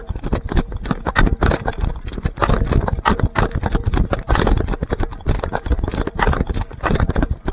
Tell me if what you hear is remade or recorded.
recorded